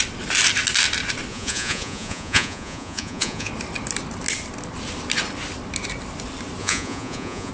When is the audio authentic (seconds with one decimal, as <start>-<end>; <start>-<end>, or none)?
0.0-1.3; 3.5-6.6